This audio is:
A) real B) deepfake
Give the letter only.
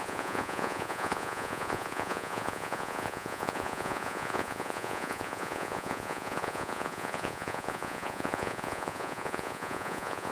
B